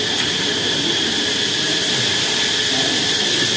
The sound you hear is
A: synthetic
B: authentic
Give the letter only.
A